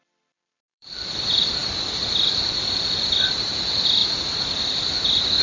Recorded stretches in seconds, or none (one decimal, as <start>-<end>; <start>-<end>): 4.0-5.4